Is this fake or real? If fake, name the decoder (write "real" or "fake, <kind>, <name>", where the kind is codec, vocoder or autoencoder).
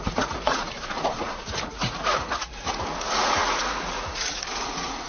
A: fake, vocoder, Vocos